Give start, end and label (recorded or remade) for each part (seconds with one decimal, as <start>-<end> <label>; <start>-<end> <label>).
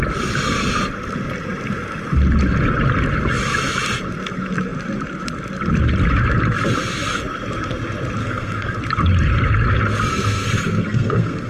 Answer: 0.0-8.2 recorded; 8.2-8.8 remade; 8.8-10.1 recorded; 10.1-11.5 remade